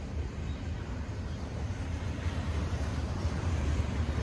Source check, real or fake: fake